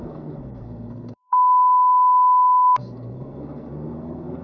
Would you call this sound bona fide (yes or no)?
no